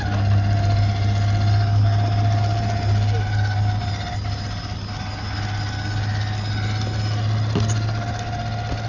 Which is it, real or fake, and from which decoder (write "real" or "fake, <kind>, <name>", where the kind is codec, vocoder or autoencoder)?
real